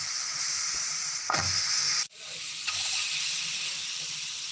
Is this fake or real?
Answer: real